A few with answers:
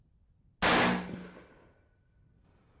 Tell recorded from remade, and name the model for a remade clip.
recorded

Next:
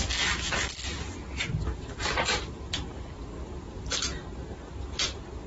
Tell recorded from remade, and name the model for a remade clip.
recorded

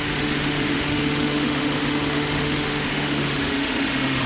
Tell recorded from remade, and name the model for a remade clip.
remade, autoencoder, DAC-VAE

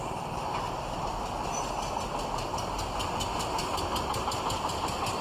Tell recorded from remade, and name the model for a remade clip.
recorded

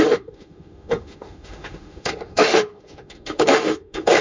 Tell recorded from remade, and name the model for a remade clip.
remade, autoencoder, DAC-VAE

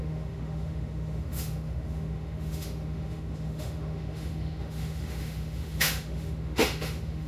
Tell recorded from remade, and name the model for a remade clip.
remade, autoencoder, DAC-VAE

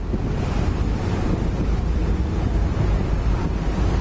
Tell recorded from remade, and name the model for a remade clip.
recorded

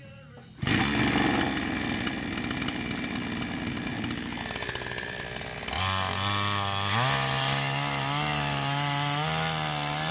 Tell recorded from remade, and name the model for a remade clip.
recorded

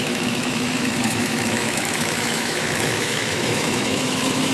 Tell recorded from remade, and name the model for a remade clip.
remade, autoencoder, DAC-VAE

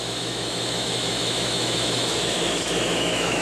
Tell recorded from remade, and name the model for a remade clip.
remade, autoencoder, DAC-VAE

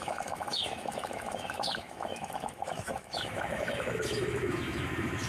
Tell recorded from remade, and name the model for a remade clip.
remade, autoencoder, DAC-VAE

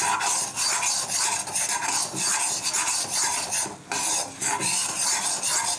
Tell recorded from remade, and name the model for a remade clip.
recorded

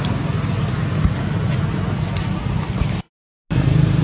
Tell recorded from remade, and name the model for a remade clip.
recorded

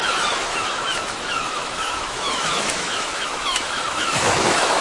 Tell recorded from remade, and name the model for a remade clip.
remade, autoencoder, DAC-VAE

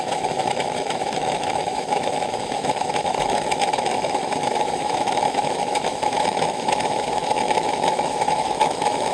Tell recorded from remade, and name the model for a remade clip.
remade, autoencoder, DAC-VAE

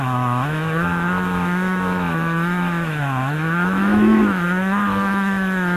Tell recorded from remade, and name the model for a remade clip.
remade, autoencoder, DAC-VAE